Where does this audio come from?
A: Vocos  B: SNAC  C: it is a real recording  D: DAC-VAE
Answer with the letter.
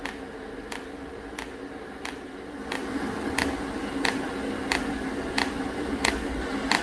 C